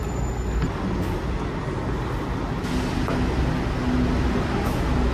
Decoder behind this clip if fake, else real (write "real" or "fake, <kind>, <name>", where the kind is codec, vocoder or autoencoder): real